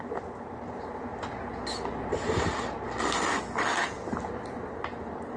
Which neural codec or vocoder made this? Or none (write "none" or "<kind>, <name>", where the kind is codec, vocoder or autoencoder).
none